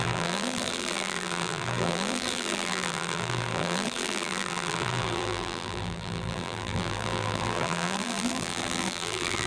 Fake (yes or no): yes